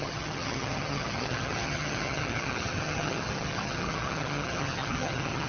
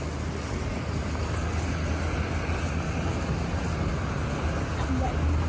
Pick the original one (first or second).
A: second